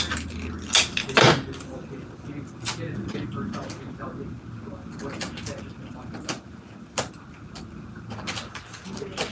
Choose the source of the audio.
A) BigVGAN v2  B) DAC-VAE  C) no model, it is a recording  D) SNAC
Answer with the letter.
C